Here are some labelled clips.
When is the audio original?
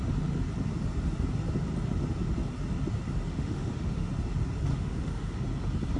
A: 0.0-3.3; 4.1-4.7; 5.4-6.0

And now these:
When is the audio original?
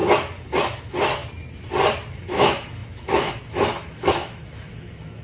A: 0.0-0.6; 1.2-2.1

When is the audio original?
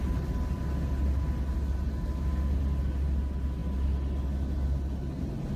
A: 0.0-5.6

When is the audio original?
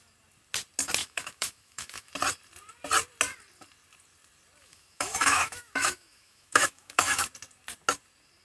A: 0.0-1.0; 2.1-4.6; 7.2-8.4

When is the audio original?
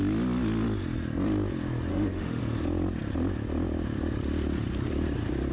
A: 0.0-1.9; 2.4-5.5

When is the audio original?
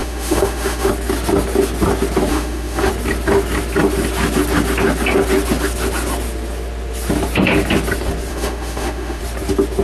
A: 0.9-2.3; 2.9-8.3; 9.2-9.8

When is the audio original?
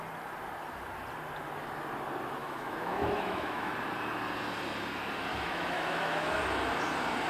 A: 0.0-2.4; 3.7-5.3; 6.4-7.3